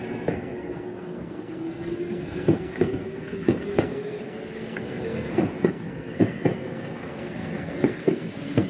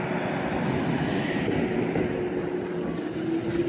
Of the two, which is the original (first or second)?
second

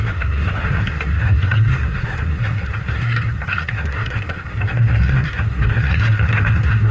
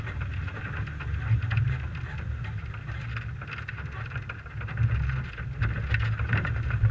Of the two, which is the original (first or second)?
second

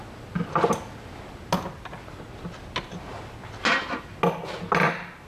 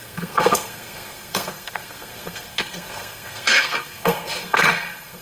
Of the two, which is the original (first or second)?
first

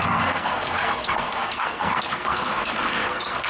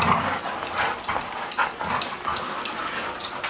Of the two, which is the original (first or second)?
second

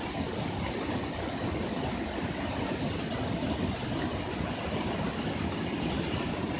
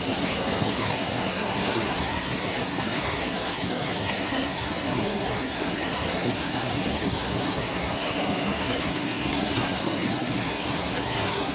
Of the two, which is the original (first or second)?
first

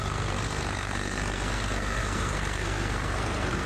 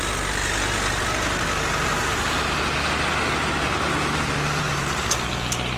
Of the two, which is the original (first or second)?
second